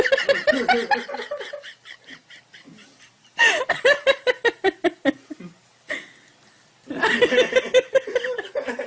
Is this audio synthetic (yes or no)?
no